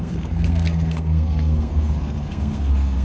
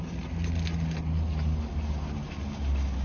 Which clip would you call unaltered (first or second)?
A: second